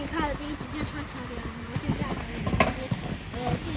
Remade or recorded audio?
recorded